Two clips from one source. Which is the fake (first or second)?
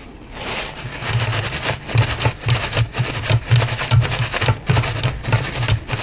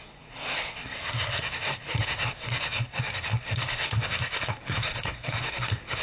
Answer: second